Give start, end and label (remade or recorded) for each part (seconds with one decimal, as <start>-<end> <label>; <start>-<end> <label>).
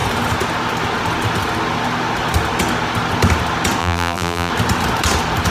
0.0-3.8 recorded; 3.8-4.5 remade; 4.5-5.5 recorded